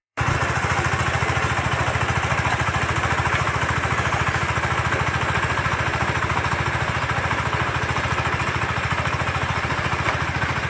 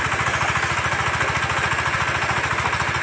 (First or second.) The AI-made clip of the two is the first